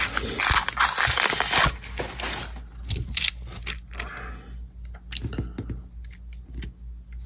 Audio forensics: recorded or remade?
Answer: recorded